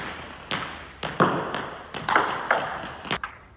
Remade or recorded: recorded